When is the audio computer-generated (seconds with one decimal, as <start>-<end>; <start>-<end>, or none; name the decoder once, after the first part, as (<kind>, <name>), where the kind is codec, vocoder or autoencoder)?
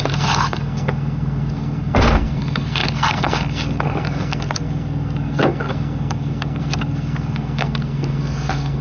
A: 0.0-8.8 (codec, SNAC)